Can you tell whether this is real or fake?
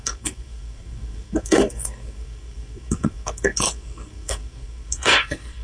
fake